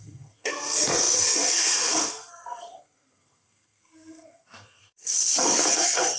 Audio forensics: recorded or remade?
remade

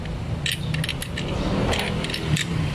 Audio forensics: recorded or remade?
recorded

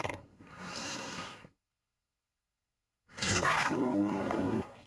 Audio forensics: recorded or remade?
remade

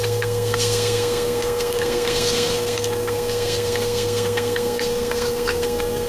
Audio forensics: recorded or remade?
remade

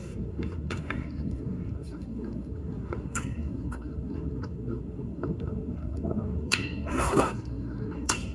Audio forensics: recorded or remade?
remade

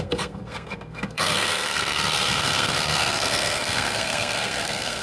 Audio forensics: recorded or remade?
remade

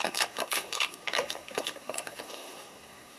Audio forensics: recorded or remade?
remade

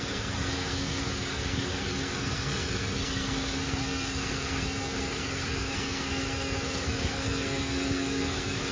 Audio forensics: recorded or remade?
remade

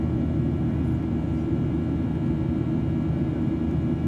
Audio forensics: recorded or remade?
recorded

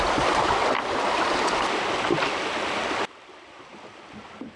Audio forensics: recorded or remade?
recorded